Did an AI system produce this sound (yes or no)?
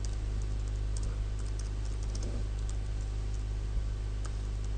no